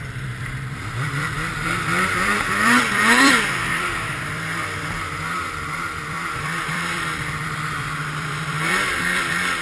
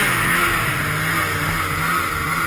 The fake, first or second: first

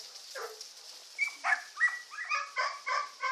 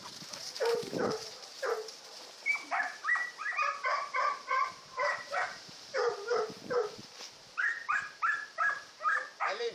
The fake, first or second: second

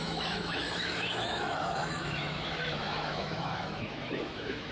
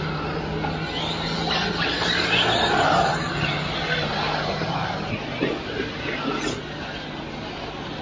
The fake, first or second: first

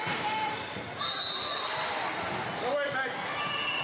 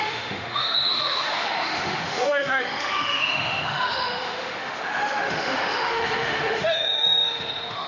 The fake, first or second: second